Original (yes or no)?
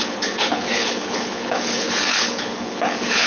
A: no